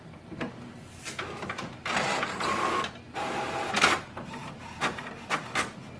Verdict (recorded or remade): recorded